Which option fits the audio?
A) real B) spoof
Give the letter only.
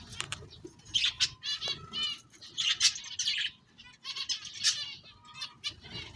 A